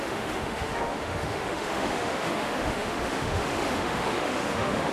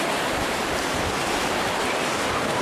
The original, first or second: second